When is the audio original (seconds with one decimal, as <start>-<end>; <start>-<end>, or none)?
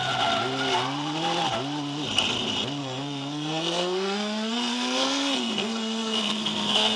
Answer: 0.0-2.8